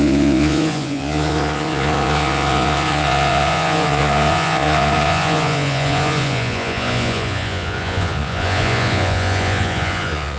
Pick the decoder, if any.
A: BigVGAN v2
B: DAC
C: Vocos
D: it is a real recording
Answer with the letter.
C